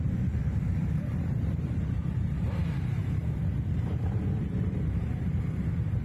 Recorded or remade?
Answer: remade